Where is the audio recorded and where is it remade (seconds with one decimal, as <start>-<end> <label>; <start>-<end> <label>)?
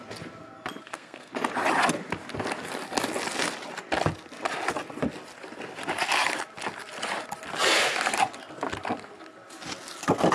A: 0.0-0.8 recorded; 0.8-1.3 remade; 1.3-10.3 recorded